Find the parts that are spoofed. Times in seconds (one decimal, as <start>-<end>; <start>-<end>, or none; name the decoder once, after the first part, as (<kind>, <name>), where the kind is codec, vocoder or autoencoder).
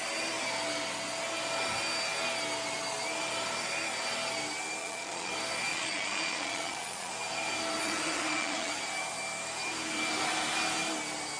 4.8-5.3 (vocoder, Vocos); 5.7-7.1; 7.8-8.7